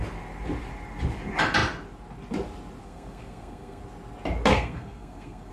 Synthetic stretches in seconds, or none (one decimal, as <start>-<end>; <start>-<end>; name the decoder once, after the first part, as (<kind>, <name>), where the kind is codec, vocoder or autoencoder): 2.8-3.8 (codec, SNAC); 4.5-5.5